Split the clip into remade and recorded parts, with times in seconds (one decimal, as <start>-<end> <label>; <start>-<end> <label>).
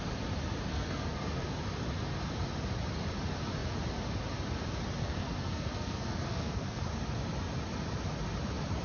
0.0-0.7 recorded; 0.7-1.5 remade; 1.5-5.0 recorded; 5.0-6.8 remade; 6.8-8.8 recorded